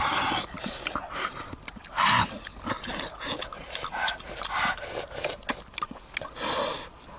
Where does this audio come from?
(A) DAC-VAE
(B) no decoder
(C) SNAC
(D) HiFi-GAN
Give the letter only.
B